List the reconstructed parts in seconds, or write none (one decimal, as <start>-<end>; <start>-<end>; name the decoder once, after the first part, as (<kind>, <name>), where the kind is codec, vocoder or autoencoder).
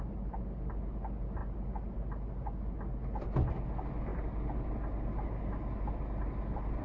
none